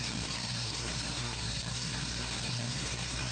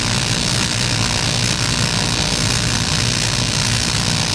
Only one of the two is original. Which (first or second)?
second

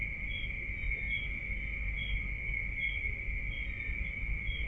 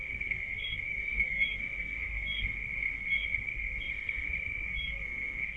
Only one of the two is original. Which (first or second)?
first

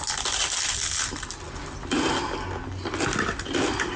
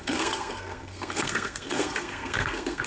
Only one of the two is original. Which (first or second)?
first